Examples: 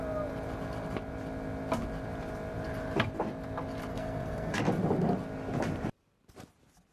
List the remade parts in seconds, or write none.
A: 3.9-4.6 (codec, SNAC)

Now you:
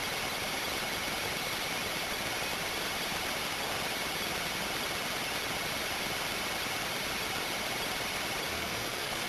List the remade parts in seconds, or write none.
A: 8.5-9.3 (codec, SNAC)

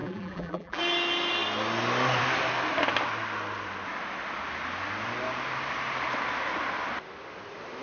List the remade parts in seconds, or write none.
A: 0.0-0.8 (vocoder, BigVGAN v2)

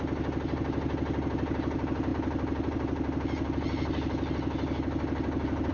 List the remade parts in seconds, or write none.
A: none

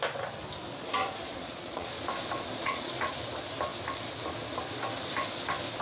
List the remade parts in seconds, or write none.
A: 1.0-1.9 (vocoder, Vocos); 2.6-3.1

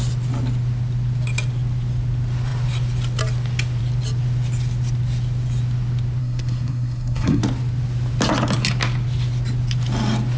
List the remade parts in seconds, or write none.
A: 6.2-7.4 (codec, SNAC)

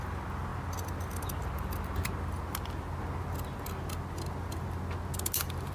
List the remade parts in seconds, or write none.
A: none